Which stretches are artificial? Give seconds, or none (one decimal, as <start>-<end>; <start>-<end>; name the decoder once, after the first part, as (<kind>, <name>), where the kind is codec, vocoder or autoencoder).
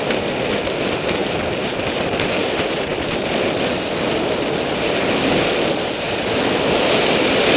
none